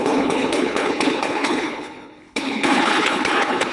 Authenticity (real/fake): fake